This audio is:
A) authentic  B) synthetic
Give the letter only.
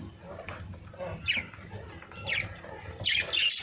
A